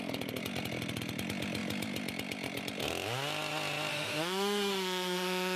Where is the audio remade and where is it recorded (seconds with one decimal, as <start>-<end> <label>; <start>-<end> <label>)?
0.0-3.9 recorded; 3.9-5.6 remade